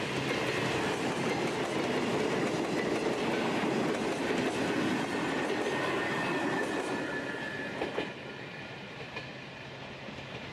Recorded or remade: recorded